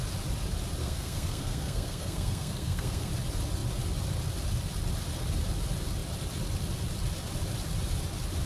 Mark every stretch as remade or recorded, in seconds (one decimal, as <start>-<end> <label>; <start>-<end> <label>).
0.0-0.8 recorded; 0.8-3.1 remade; 3.1-8.5 recorded